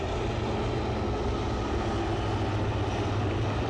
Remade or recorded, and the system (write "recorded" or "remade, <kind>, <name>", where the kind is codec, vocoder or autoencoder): recorded